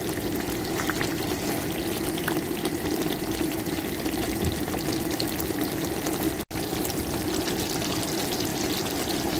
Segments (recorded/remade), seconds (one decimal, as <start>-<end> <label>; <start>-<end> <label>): 0.0-9.4 remade